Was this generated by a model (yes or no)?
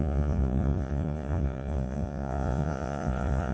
yes